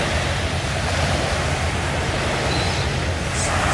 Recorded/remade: recorded